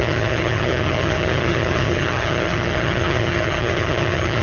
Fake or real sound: fake